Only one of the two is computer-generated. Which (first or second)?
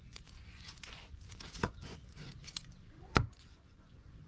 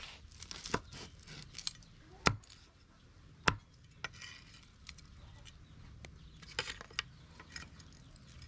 first